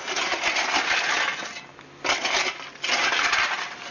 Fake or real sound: real